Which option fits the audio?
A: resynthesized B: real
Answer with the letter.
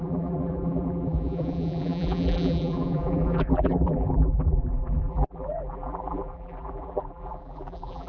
A